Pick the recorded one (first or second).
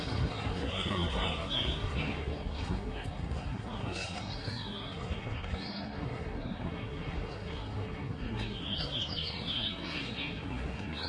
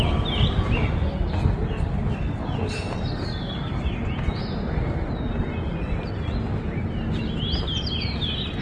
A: second